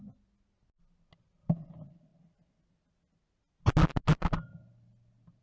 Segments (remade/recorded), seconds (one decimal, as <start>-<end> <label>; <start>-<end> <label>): 0.0-5.4 recorded